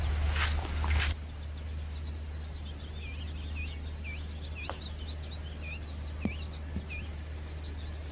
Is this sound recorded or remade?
recorded